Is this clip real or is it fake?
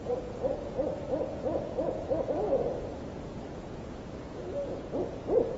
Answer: fake